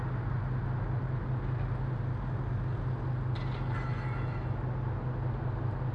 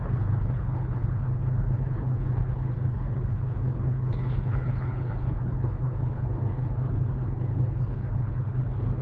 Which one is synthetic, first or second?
second